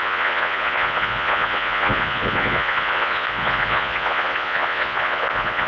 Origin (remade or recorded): remade